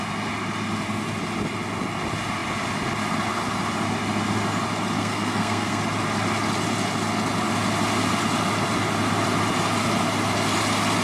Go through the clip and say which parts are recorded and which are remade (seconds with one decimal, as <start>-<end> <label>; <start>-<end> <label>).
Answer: 0.0-5.0 recorded; 5.0-5.8 remade; 5.8-11.0 recorded